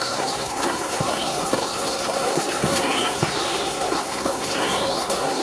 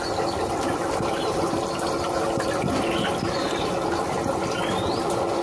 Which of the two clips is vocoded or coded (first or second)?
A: first